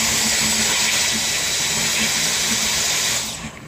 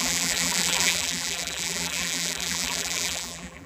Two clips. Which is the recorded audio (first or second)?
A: first